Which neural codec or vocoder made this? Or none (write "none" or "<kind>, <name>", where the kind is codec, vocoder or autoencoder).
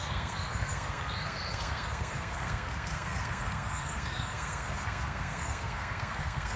codec, SNAC